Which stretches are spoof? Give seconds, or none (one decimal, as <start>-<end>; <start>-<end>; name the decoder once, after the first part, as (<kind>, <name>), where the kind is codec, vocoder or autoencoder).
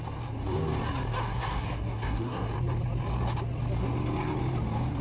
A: 1.2-2.5 (codec, SNAC)